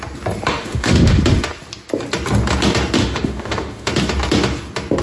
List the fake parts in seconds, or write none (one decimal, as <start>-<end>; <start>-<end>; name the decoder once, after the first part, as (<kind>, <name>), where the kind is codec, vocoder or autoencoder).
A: 0.5-1.2 (autoencoder, DAC-VAE); 3.0-3.9